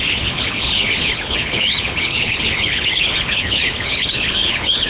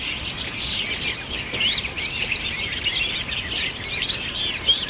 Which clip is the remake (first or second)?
first